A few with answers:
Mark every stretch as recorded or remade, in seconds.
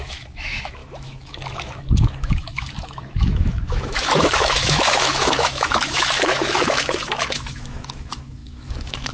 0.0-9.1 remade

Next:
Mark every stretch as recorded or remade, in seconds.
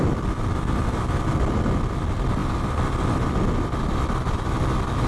0.0-5.1 recorded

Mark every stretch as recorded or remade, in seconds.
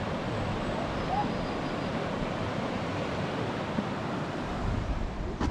0.0-5.5 recorded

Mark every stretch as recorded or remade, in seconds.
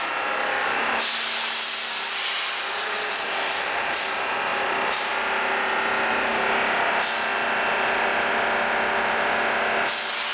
0.0-4.5 recorded; 4.5-5.1 remade; 5.1-7.3 recorded; 7.3-8.3 remade; 8.3-10.3 recorded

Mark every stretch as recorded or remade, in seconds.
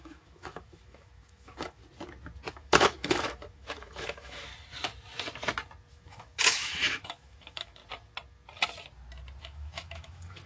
0.0-1.8 remade; 1.8-2.5 recorded; 2.5-4.5 remade; 4.5-5.9 recorded; 5.9-7.8 remade; 7.8-9.4 recorded; 9.4-10.5 remade